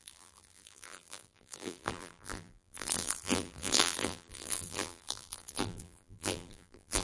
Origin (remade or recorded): remade